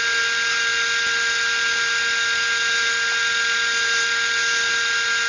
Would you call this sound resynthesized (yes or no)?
no